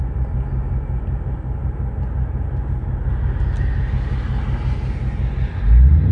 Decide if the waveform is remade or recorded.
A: recorded